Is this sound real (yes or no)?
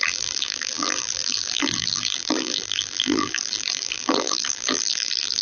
no